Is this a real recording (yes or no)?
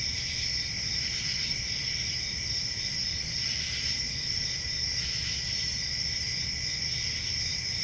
yes